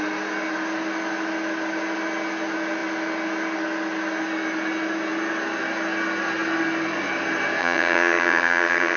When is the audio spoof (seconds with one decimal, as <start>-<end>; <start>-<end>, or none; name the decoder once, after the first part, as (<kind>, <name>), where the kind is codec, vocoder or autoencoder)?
7.6-9.0 (vocoder, HiFi-GAN)

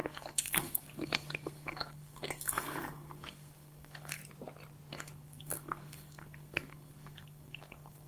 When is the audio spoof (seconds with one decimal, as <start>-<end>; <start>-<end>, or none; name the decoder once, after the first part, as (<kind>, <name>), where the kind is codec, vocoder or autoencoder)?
0.0-4.2 (codec, SNAC); 4.9-8.1